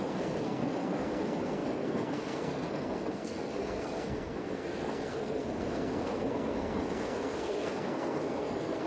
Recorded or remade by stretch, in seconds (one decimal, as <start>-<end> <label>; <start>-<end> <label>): 0.0-8.9 remade

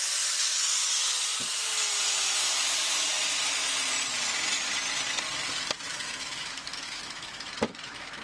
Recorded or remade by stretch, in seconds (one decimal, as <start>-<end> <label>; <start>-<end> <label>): 0.0-5.9 recorded; 5.9-8.2 remade

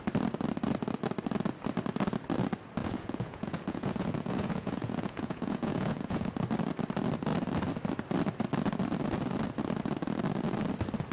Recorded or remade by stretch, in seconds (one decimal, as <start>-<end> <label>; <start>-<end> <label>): 0.0-2.8 recorded; 2.8-6.3 remade; 6.3-11.1 recorded